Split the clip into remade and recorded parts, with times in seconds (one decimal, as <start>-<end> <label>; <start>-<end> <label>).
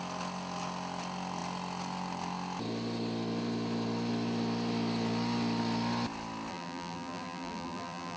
0.0-6.5 recorded; 6.5-8.2 remade